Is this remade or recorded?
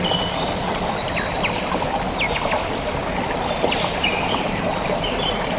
recorded